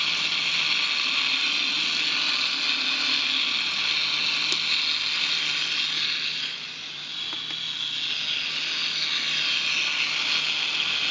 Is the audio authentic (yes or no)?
yes